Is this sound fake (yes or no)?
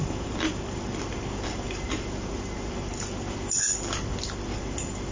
no